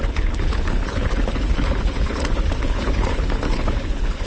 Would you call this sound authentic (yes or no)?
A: no